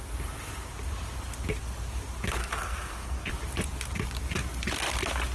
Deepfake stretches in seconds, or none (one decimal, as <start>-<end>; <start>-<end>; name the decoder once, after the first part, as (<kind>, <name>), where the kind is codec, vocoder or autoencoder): 2.4-3.3 (codec, SNAC)